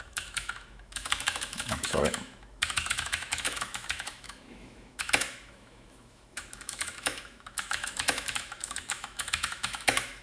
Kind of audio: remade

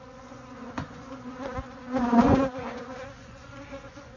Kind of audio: remade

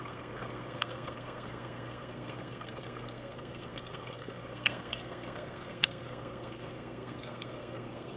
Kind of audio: remade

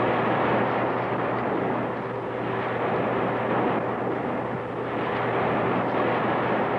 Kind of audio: recorded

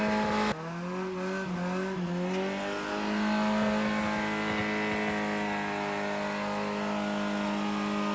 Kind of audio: recorded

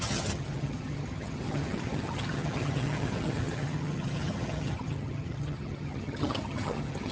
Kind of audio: remade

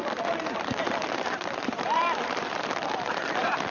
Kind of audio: remade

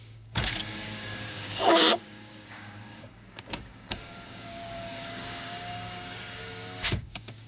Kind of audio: remade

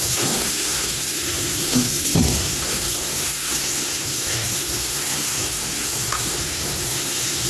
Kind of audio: remade